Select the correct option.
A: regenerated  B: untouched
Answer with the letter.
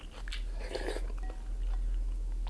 B